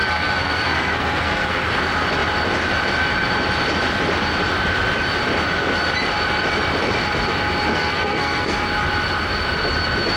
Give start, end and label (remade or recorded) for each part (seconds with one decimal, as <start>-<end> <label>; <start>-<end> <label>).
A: 0.0-1.8 remade; 1.8-7.7 recorded; 7.7-8.6 remade; 8.6-10.2 recorded